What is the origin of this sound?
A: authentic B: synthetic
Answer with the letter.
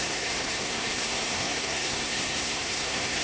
B